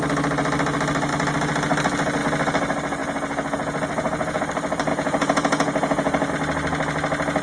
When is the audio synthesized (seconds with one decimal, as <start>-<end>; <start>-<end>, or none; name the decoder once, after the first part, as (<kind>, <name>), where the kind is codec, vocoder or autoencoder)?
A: 3.0-4.4 (vocoder, Vocos); 4.9-6.3